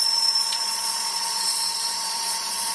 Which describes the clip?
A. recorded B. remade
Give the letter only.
B